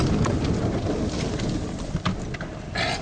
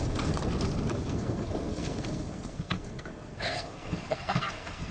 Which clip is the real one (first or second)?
first